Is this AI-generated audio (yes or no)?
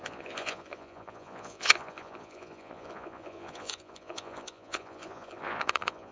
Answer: yes